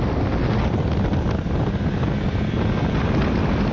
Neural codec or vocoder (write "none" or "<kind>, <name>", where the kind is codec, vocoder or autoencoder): none